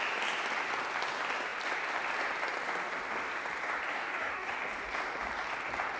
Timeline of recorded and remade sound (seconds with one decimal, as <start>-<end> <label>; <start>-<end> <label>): 0.0-3.9 recorded; 3.9-4.6 remade; 4.6-6.0 recorded

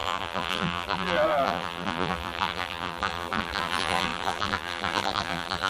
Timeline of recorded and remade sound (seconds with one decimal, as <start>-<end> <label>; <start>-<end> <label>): 0.0-5.7 remade

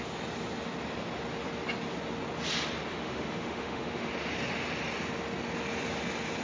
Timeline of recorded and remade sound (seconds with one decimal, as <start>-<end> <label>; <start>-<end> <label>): 0.0-2.9 recorded; 2.9-4.1 remade; 4.1-6.4 recorded

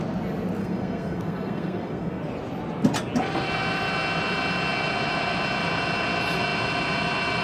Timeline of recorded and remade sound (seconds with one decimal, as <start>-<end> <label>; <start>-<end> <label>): 0.0-0.6 recorded; 0.6-2.2 remade; 2.2-7.4 recorded